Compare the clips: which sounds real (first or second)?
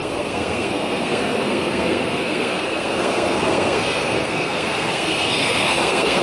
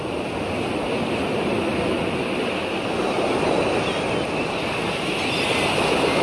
second